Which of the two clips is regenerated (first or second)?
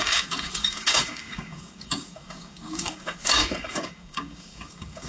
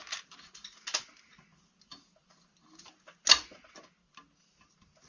first